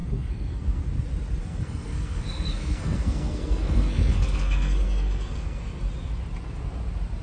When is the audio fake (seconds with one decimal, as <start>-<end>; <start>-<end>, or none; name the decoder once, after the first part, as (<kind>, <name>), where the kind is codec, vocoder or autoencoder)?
0.0-0.8 (codec, SNAC); 1.4-5.7